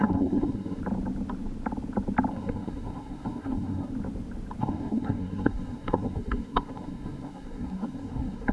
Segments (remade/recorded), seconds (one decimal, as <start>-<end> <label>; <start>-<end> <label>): 0.0-0.8 remade; 0.8-2.3 recorded; 2.3-3.9 remade; 3.9-4.6 recorded; 4.6-8.5 remade